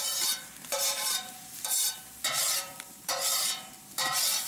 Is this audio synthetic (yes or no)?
yes